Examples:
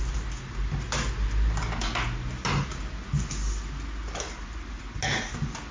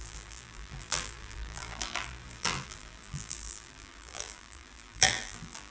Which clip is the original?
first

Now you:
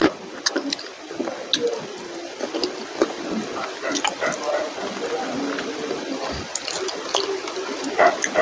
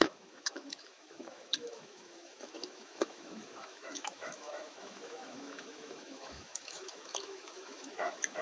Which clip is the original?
first